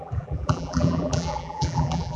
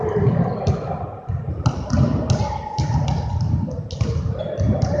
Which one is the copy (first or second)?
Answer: first